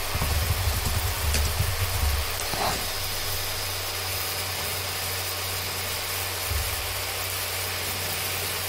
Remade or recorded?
recorded